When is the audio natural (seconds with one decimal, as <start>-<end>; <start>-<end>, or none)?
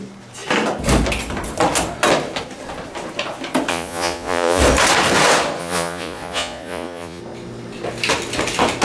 0.0-3.7; 4.6-5.6; 7.2-8.8